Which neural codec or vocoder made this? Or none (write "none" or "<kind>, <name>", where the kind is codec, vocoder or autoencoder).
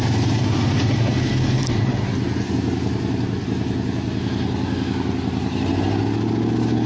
none